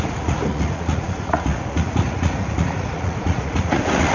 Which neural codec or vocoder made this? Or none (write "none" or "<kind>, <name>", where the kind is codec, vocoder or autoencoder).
vocoder, Vocos